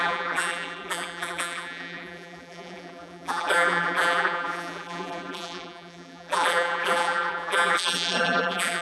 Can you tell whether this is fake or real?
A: fake